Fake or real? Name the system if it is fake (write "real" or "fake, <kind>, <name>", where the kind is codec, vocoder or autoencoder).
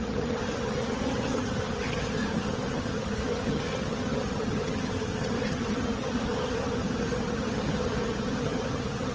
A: fake, vocoder, HiFi-GAN